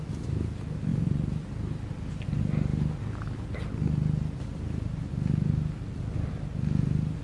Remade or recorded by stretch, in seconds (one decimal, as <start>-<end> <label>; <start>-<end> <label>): 0.0-7.2 recorded